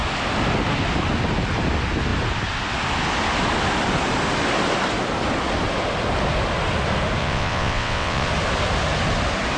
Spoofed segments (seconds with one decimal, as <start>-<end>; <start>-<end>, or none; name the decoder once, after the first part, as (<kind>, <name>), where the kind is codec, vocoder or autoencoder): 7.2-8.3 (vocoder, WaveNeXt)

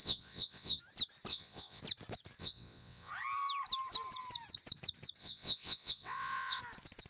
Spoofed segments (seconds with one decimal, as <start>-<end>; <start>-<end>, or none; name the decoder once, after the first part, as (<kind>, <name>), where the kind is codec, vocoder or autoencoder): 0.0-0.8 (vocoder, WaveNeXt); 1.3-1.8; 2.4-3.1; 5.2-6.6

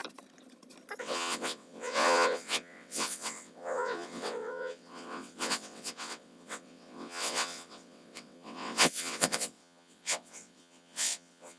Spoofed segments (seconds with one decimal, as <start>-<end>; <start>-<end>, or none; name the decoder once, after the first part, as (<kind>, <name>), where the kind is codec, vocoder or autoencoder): 1.0-11.6 (vocoder, WaveNeXt)

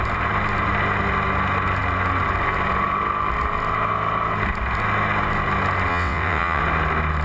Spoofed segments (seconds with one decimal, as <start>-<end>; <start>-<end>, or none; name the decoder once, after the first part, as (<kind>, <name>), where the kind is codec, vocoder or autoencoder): 5.9-6.6 (vocoder, WaveNeXt)

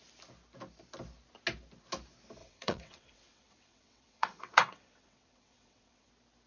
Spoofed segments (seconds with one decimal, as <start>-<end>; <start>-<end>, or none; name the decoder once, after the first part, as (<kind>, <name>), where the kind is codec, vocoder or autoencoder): 2.4-6.1 (vocoder, WaveNeXt)

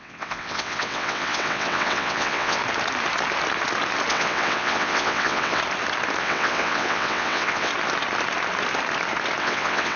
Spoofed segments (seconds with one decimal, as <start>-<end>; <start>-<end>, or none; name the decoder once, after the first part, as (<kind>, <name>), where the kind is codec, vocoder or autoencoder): 0.0-2.6 (vocoder, WaveNeXt); 4.1-5.6; 6.2-7.7; 9.4-10.0

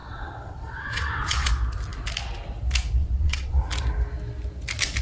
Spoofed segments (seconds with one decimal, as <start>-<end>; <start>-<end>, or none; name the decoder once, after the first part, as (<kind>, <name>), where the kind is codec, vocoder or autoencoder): 0.0-1.5 (vocoder, WaveNeXt); 3.0-3.6

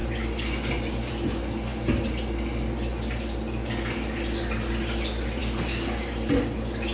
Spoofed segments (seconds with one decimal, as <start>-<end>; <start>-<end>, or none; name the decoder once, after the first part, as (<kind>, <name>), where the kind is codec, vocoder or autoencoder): none